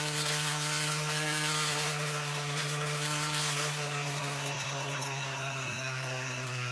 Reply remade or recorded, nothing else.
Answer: remade